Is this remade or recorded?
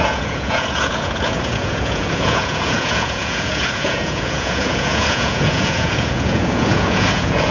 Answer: remade